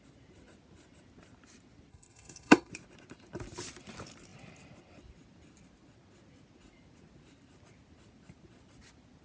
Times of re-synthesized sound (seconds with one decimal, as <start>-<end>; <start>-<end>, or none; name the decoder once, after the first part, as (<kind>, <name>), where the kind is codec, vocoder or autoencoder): 1.9-2.7 (codec, SNAC)